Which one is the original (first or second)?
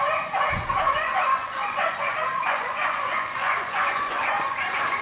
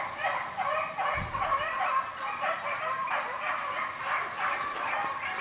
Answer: second